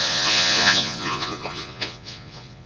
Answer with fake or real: fake